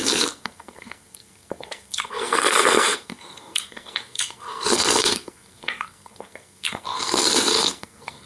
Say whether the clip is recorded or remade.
remade